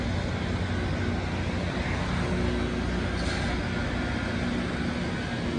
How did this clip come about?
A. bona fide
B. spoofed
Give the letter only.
A